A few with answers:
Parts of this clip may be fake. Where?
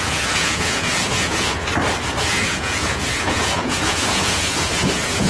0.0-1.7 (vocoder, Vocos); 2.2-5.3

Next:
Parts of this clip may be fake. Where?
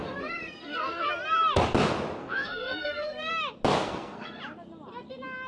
0.0-1.0 (codec, SNAC); 2.2-3.3; 3.8-4.4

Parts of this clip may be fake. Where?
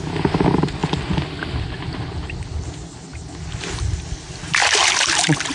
none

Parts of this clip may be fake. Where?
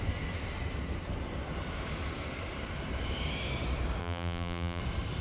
4.0-4.8 (vocoder, BigVGAN v2)